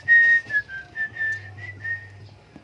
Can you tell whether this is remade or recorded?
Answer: recorded